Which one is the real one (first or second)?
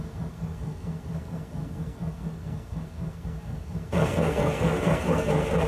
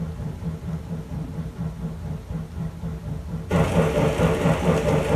second